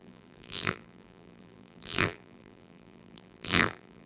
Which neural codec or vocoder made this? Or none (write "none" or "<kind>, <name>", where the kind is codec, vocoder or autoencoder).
vocoder, BigVGAN v2